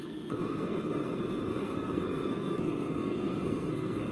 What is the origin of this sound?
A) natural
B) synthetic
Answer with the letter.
B